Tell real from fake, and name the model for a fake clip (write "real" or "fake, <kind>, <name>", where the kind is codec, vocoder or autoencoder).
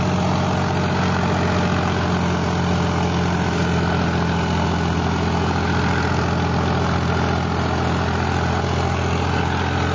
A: real